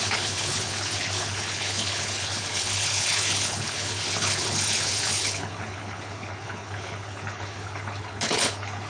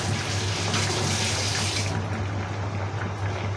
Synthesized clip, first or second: first